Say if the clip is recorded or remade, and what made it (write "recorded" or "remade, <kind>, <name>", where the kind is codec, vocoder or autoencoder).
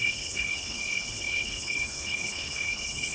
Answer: remade, codec, HILCodec